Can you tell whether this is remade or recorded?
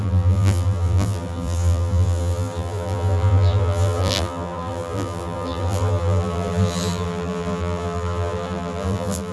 remade